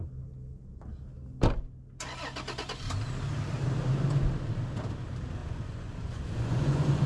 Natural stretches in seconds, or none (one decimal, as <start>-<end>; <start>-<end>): 0.0-5.4